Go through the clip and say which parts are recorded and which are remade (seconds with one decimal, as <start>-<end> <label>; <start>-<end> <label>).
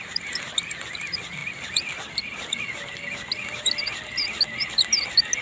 0.0-5.4 recorded